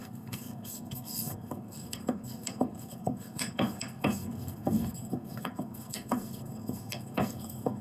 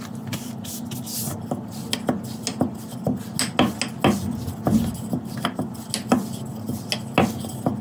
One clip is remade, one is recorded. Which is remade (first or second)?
first